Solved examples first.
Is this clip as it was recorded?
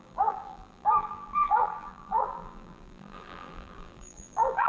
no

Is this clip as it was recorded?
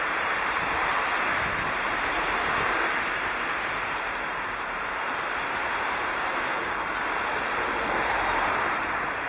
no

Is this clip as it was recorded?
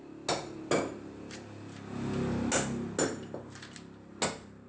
yes